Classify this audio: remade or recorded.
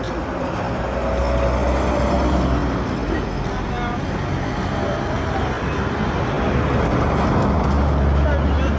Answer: recorded